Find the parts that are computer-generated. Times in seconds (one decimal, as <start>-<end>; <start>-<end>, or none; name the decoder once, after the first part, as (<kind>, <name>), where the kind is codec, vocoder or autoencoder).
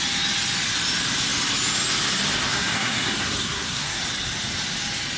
2.5-4.0 (codec, SNAC)